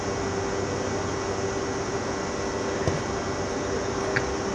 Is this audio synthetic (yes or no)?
no